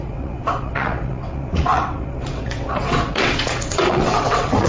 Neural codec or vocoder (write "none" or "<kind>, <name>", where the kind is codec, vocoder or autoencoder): vocoder, WaveNeXt